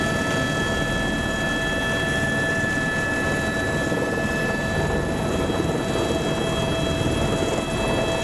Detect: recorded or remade recorded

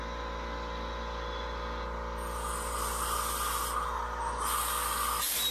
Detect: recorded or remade recorded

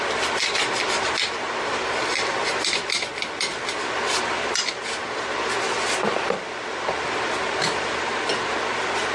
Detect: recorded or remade recorded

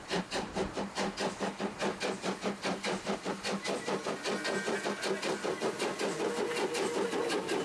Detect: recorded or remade recorded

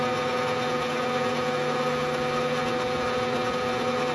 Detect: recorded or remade recorded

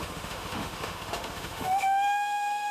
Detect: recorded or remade remade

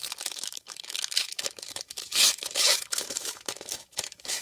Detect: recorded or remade remade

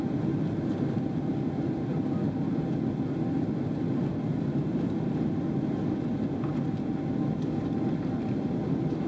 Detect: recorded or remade recorded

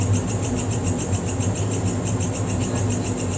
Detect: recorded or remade recorded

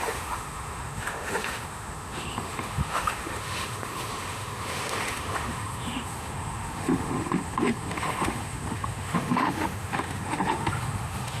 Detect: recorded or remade remade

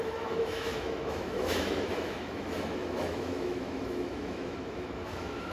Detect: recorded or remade remade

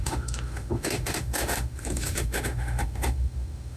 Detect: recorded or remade remade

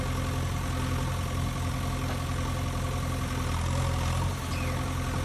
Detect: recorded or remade recorded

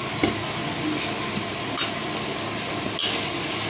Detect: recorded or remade recorded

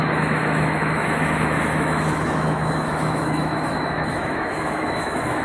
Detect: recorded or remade remade